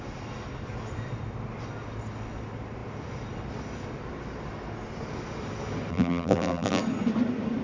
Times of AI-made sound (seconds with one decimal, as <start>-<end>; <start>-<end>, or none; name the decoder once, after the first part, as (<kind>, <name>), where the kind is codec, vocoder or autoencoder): 5.9-6.8 (vocoder, BigVGAN v2)

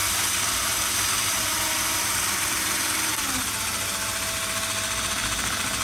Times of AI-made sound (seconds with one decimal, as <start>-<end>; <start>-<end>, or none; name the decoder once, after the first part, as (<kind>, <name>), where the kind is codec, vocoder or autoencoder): none

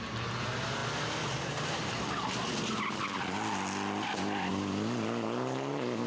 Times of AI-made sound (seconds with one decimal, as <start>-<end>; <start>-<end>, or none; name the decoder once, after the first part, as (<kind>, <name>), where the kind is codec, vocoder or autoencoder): none